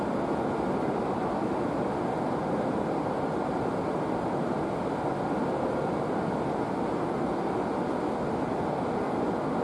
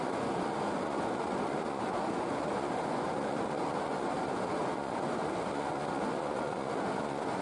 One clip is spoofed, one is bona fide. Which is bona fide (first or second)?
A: first